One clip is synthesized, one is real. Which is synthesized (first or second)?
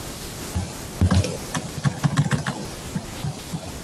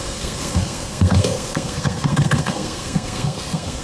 second